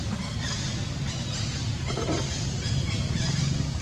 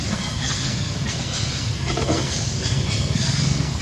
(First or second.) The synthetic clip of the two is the second